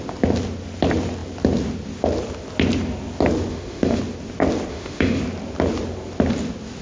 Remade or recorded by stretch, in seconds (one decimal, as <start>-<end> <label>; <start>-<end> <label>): 0.0-3.5 recorded; 3.5-4.0 remade; 4.0-4.7 recorded; 4.7-5.2 remade; 5.2-6.8 recorded